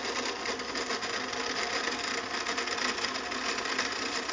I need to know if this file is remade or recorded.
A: recorded